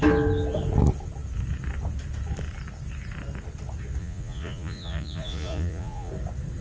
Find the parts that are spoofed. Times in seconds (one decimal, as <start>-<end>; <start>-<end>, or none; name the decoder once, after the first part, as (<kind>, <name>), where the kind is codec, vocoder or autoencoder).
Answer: 4.0-6.1 (vocoder, Vocos)